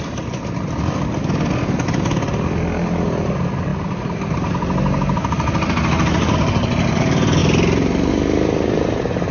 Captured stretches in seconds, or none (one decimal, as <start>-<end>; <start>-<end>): 0.0-9.3